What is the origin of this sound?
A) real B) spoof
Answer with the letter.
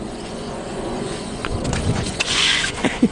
B